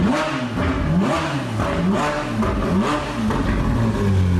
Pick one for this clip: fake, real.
real